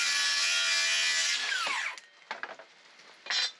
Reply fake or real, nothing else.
real